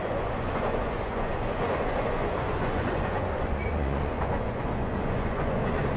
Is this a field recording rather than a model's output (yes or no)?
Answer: no